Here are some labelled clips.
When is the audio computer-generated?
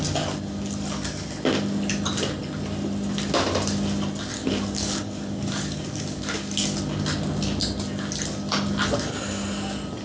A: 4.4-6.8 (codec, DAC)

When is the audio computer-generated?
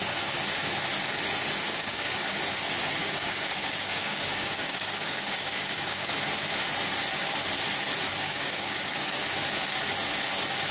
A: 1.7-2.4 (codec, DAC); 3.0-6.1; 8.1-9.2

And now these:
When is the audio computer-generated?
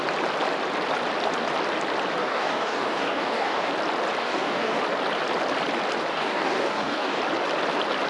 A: 2.2-3.7 (codec, DAC); 4.2-4.8; 6.1-7.2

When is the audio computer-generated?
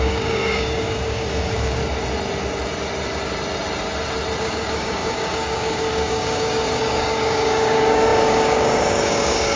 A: 0.0-1.8 (codec, DAC); 4.4-9.6